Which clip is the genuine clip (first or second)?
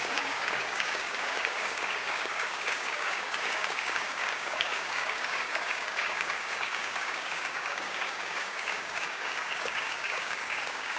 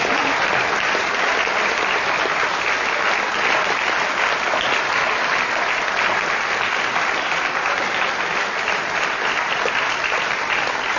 second